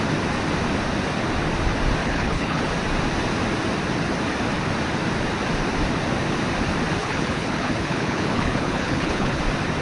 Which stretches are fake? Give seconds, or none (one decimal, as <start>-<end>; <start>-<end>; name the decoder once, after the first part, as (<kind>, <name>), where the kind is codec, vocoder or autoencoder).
2.0-2.7 (codec, HILCodec); 7.0-9.4